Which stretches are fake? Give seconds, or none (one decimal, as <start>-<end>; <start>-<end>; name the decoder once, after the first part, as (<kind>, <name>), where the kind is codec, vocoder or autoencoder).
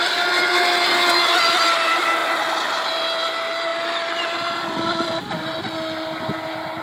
none